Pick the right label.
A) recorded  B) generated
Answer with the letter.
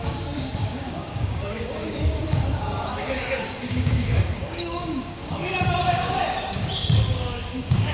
B